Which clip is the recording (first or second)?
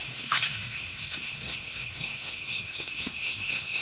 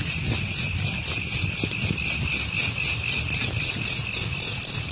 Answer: second